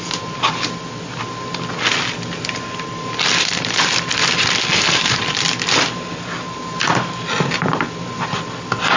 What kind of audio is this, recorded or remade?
recorded